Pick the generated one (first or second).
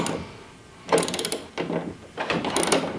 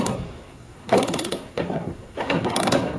second